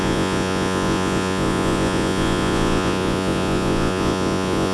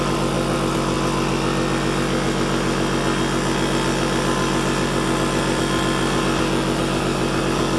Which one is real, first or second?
second